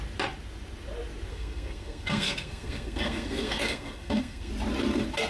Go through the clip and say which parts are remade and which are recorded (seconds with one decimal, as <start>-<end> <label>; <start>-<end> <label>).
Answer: 0.0-1.3 recorded; 1.3-4.5 remade; 4.5-5.3 recorded